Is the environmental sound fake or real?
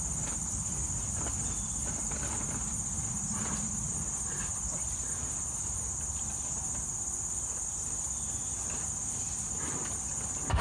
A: real